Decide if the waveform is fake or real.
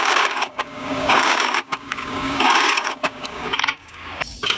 fake